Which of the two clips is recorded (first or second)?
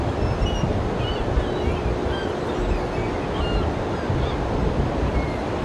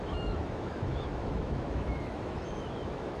first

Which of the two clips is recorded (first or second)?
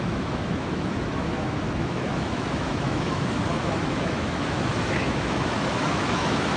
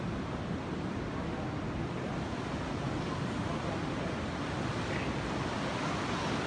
second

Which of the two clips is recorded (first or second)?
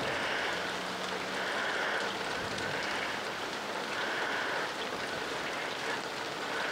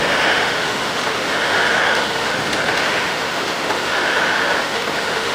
first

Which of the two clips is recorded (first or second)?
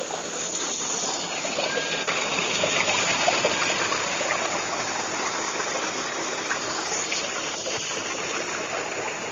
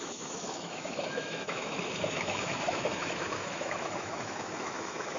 first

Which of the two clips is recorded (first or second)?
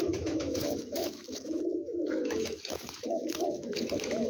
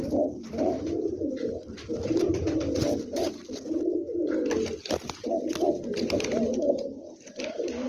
second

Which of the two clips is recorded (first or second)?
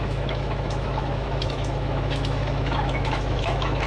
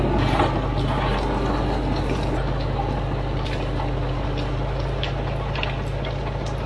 second